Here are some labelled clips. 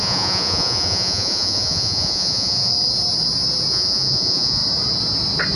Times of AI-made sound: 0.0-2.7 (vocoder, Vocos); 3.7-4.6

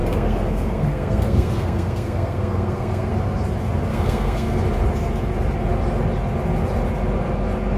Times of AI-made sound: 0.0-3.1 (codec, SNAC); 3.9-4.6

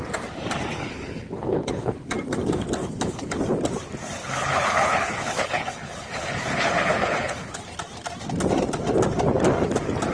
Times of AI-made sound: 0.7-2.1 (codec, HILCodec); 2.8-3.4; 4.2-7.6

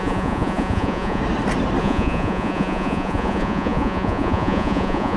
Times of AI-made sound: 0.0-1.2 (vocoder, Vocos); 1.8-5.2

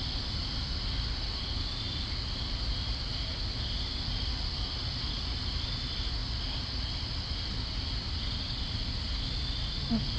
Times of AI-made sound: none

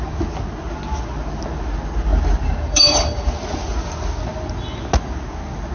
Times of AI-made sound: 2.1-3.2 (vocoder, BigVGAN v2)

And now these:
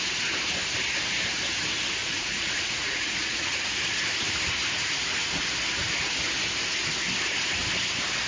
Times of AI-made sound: 2.0-3.7 (vocoder, Vocos)